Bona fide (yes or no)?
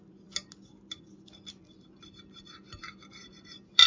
yes